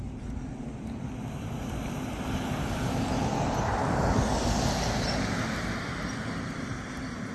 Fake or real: real